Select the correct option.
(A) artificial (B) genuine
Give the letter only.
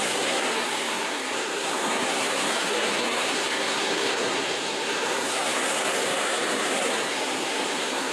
A